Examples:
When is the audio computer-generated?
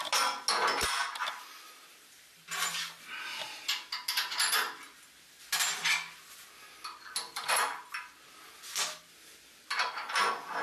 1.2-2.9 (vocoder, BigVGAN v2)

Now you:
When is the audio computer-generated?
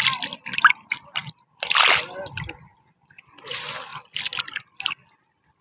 none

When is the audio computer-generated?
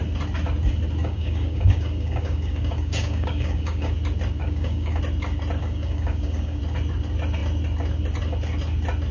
1.0-3.9 (codec, DAC); 4.4-5.0; 5.6-6.6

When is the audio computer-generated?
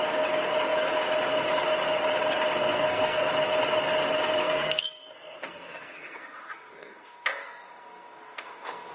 2.6-3.3 (codec, SNAC); 4.4-8.9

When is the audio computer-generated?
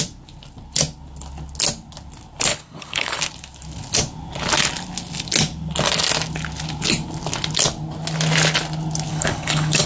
2.5-3.2 (codec, HILCodec); 9.1-9.9